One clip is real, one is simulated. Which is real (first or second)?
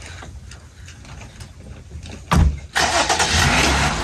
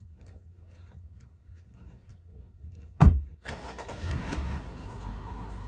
first